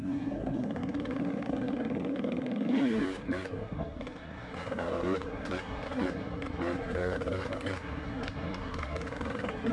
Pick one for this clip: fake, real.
fake